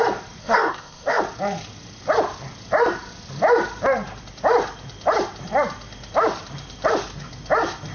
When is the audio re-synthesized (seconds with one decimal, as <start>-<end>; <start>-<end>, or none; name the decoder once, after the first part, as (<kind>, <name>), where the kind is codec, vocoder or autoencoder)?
0.4-1.2 (codec, ZipCodec)